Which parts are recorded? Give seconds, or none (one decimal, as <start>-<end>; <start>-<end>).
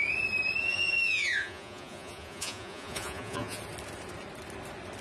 0.0-0.6; 3.6-5.0